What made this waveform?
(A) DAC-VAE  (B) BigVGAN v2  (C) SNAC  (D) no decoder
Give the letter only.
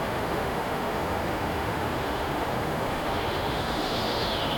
A